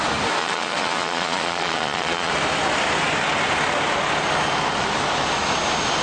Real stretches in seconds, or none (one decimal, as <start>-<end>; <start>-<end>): 0.0-0.4; 2.3-6.0